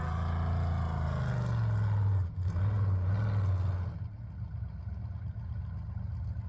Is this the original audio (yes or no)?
yes